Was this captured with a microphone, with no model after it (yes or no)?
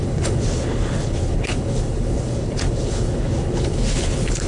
no